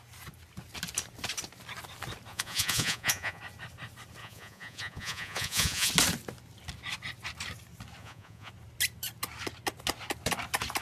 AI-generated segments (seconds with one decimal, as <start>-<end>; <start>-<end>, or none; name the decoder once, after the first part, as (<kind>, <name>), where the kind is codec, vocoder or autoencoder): 2.3-3.4 (vocoder, Vocos); 4.2-5.9; 8.0-8.5

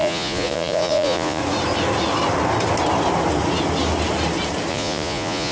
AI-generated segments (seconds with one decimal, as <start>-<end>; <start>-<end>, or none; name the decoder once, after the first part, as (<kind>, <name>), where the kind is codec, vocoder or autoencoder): 0.0-1.4 (vocoder, Vocos); 4.7-5.5